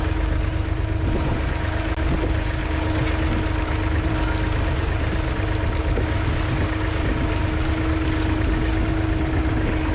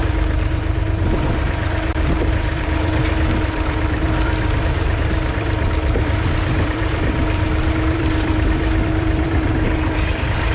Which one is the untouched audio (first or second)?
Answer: first